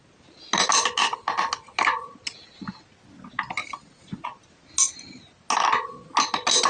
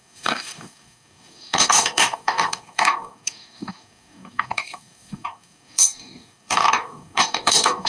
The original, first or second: first